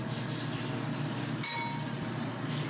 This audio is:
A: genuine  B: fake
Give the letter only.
A